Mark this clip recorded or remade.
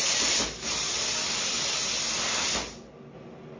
recorded